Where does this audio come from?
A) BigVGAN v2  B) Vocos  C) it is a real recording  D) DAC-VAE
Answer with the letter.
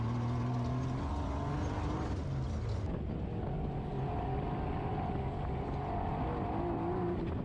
C